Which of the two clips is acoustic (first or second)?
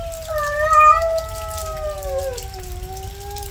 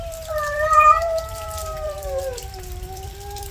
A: first